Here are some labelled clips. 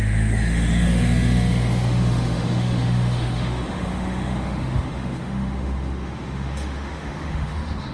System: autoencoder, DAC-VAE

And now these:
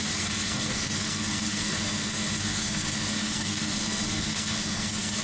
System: codec, SNAC